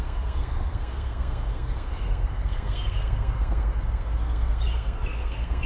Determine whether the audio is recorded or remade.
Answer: remade